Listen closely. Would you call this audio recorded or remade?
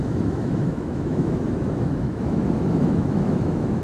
remade